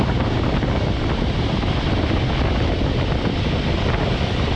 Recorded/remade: recorded